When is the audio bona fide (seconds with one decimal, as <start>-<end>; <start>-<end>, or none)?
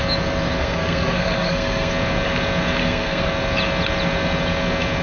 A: 0.0-0.6; 1.9-2.8; 3.3-5.0